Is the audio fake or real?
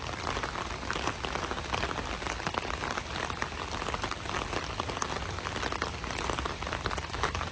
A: real